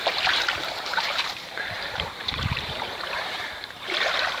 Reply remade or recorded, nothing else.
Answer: remade